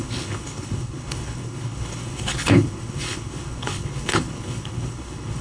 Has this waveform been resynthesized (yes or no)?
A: yes